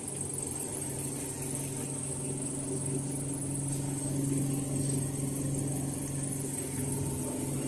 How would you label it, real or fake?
real